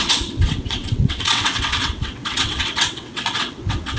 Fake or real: fake